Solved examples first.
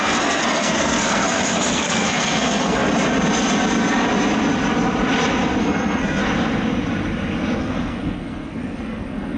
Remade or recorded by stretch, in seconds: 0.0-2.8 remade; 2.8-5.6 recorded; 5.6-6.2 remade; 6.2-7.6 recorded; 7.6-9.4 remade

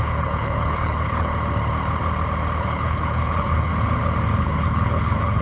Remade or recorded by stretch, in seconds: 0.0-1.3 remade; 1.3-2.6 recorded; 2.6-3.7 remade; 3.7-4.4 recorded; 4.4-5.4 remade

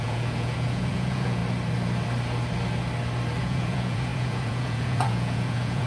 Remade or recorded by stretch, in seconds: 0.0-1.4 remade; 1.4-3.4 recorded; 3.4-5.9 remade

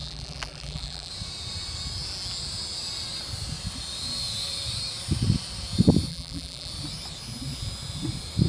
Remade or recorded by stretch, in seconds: 0.0-1.1 remade; 1.1-6.1 recorded; 6.1-6.7 remade; 6.7-8.5 recorded

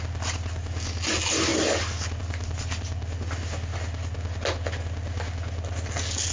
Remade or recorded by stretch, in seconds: 0.0-6.3 recorded

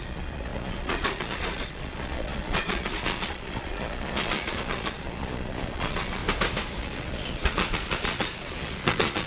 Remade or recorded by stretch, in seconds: 0.0-6.2 remade; 6.2-6.8 recorded; 6.8-9.3 remade

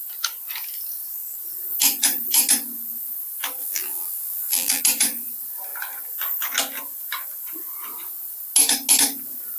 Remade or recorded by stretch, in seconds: 0.0-3.6 recorded; 3.6-4.8 remade; 4.8-9.6 recorded